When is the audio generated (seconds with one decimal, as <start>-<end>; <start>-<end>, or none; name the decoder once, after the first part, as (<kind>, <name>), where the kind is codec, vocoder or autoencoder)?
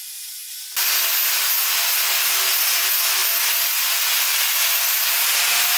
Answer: none